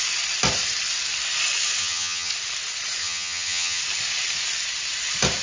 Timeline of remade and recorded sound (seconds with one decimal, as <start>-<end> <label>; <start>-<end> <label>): 0.0-1.8 recorded; 1.8-2.3 remade; 2.3-3.0 recorded; 3.0-3.8 remade; 3.8-5.4 recorded